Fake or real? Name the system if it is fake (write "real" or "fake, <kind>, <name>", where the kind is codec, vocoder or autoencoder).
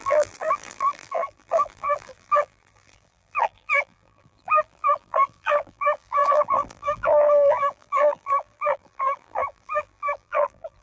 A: fake, vocoder, BigVGAN v2